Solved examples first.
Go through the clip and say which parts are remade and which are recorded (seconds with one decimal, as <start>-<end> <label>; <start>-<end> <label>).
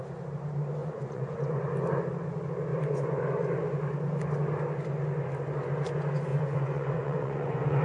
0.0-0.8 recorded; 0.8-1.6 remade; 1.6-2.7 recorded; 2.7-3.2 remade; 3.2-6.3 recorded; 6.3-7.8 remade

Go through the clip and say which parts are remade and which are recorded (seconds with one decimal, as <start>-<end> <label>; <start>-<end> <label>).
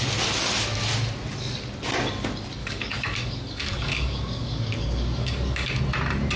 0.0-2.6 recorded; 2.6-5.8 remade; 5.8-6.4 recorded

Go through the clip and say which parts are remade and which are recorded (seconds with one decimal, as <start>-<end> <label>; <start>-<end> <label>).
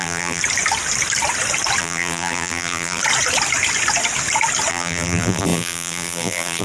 0.0-0.4 remade; 0.4-1.8 recorded; 1.8-3.0 remade; 3.0-4.7 recorded; 4.7-6.6 remade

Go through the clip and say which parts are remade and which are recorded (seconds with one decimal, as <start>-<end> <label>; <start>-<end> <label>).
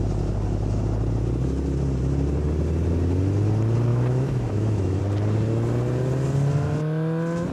0.0-3.9 recorded; 3.9-5.0 remade; 5.0-7.5 recorded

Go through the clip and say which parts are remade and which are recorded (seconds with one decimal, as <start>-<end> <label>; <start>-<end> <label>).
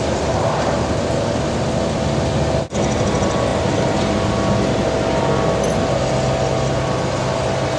0.0-7.8 recorded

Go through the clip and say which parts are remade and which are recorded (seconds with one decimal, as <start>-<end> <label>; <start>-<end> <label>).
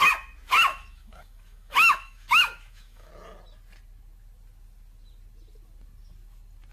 0.0-0.7 recorded; 0.7-3.1 remade; 3.1-6.7 recorded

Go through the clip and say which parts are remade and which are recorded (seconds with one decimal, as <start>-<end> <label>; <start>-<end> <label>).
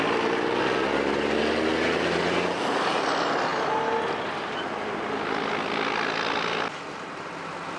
0.0-7.8 recorded